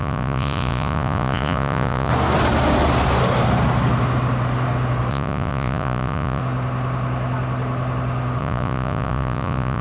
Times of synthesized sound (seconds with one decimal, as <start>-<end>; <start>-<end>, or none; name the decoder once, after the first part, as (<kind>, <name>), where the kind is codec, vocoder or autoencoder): 0.0-2.1 (vocoder, Vocos); 5.1-6.4; 8.4-9.8